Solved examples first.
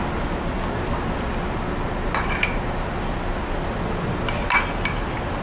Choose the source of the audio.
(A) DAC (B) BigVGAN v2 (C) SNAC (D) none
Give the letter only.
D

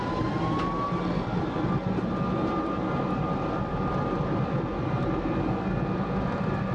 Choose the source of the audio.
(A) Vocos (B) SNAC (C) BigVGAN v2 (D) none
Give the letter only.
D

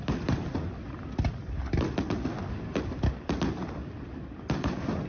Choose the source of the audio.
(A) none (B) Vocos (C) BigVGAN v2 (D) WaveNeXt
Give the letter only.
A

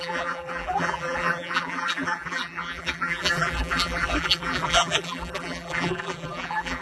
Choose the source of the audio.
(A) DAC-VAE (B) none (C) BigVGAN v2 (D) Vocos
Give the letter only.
C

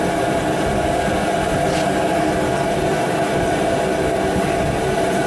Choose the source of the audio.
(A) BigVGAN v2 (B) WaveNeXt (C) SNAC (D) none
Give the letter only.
D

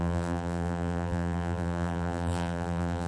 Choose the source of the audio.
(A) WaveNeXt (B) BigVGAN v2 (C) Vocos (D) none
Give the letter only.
B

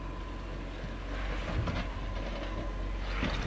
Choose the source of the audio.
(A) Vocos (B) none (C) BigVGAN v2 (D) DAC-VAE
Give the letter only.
B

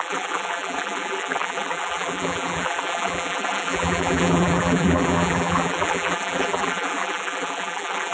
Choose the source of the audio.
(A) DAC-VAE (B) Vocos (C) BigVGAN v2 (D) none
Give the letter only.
C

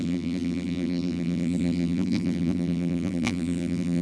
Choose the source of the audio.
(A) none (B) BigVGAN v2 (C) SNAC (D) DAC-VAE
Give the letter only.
B